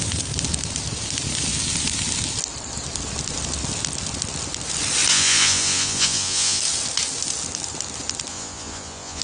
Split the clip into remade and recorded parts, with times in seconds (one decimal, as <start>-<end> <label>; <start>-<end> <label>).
0.0-5.1 recorded; 5.1-6.6 remade; 6.6-8.3 recorded; 8.3-9.2 remade